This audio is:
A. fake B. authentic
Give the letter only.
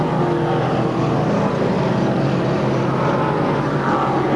B